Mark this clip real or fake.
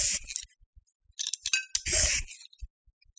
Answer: real